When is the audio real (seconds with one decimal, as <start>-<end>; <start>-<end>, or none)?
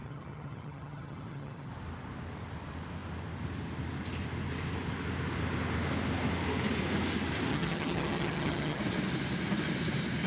1.7-7.5; 8.8-10.3